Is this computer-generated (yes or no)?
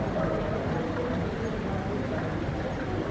yes